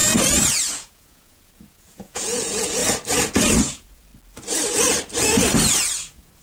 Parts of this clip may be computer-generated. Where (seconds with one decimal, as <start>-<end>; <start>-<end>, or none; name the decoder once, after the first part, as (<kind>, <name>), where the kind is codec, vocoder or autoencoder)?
0.5-2.8 (vocoder, Vocos); 3.6-4.1; 6.0-6.4